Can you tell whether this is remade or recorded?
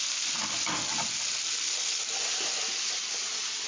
recorded